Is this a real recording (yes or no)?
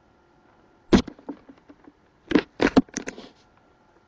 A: yes